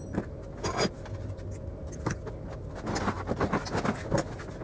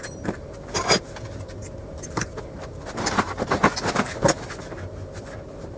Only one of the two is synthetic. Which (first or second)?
second